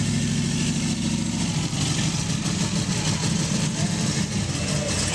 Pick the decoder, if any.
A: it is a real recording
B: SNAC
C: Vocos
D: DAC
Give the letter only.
A